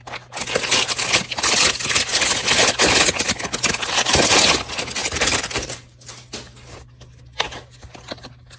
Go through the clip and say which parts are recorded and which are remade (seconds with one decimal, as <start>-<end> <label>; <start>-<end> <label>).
0.0-5.0 recorded; 5.0-6.1 remade; 6.1-8.6 recorded